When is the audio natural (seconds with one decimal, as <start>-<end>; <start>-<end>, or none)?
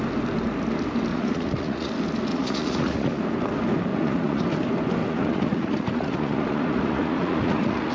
0.0-1.1; 1.9-2.3; 3.2-3.9; 4.4-5.0